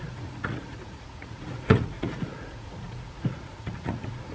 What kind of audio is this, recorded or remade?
remade